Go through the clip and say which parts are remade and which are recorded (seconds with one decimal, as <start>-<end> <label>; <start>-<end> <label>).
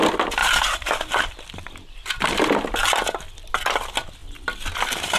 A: 0.0-5.2 recorded